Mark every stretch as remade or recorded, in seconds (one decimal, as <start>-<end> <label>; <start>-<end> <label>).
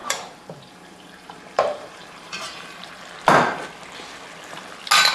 0.0-3.1 remade; 3.1-5.1 recorded